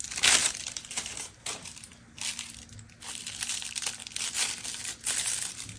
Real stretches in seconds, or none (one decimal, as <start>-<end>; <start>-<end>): 0.0-0.4; 1.9-5.8